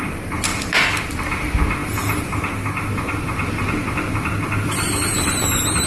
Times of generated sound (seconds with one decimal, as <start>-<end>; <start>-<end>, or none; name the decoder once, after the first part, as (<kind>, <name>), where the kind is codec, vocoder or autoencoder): none